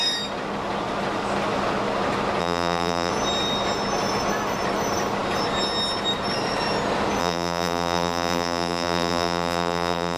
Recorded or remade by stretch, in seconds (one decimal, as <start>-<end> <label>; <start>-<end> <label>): 0.0-2.4 recorded; 2.4-3.1 remade; 3.1-7.2 recorded; 7.2-10.2 remade